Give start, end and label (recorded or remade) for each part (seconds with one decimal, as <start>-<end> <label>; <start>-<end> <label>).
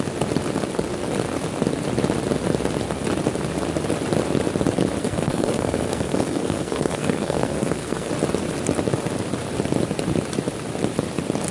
0.0-5.0 recorded; 5.0-8.1 remade; 8.1-11.5 recorded